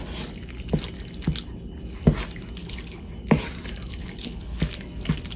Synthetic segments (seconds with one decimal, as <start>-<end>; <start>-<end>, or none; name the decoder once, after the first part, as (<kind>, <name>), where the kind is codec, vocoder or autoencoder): 2.6-3.1 (codec, HILCodec); 4.0-4.6